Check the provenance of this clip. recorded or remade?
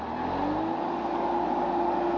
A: recorded